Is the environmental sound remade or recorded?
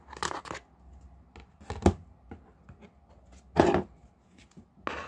recorded